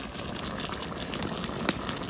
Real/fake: real